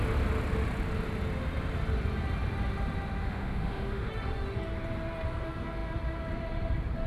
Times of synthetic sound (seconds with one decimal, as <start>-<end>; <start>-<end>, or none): 3.2-4.1